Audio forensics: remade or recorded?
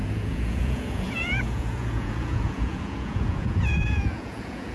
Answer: remade